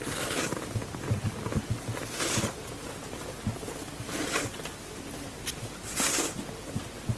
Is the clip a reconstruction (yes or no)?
no